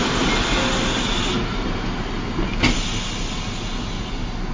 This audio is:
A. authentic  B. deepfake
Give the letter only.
A